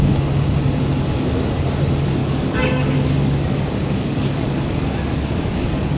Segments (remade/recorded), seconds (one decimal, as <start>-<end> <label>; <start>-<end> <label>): 0.0-2.2 recorded; 2.2-6.0 remade